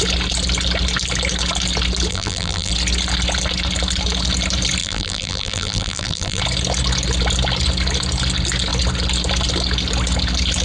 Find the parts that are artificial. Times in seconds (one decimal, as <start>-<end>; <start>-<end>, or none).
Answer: 2.1-2.7; 4.8-6.4